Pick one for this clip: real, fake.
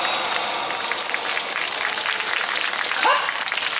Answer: real